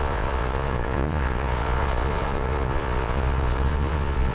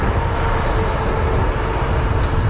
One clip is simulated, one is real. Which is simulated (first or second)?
first